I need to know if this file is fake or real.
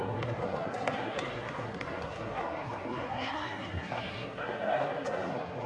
fake